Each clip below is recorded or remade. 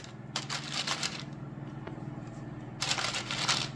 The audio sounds recorded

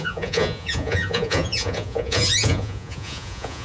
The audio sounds remade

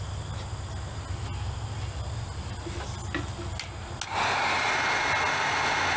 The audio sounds recorded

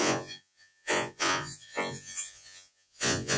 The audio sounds remade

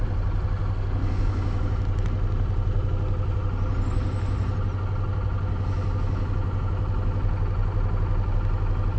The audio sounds recorded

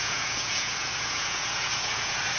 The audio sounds remade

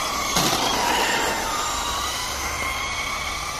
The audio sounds recorded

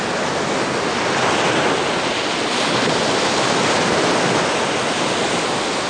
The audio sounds recorded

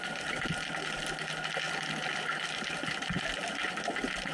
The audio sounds recorded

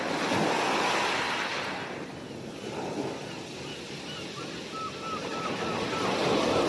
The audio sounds recorded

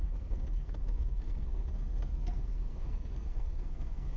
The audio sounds remade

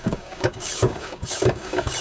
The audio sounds remade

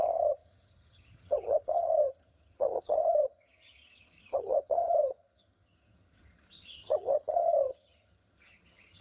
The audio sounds remade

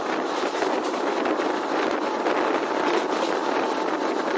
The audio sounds recorded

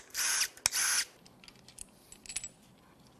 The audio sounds recorded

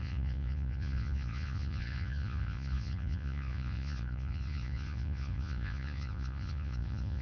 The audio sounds remade